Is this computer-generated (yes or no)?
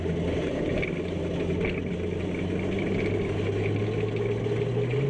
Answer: no